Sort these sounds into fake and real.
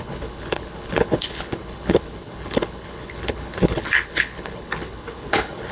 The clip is fake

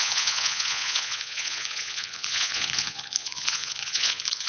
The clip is fake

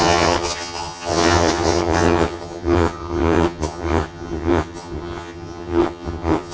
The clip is fake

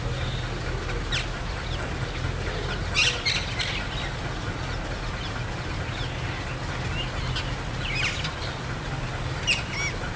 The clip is real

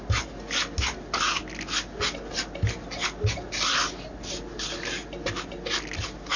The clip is real